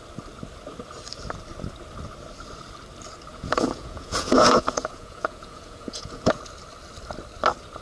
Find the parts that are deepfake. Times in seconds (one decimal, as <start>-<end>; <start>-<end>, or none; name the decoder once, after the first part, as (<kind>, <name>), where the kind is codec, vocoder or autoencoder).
3.3-6.4 (vocoder, Vocos)